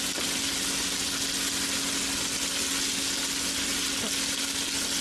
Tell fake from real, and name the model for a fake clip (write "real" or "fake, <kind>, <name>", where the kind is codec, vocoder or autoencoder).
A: real